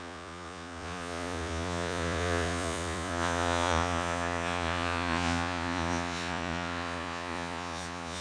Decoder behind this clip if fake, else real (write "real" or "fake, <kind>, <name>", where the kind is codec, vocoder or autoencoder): fake, vocoder, Vocos